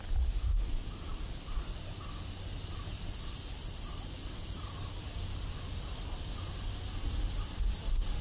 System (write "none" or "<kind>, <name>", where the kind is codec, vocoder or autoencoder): none